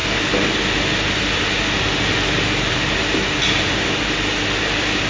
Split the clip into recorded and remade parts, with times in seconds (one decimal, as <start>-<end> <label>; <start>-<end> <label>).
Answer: 0.0-5.1 recorded